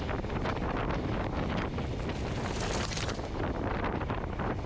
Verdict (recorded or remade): recorded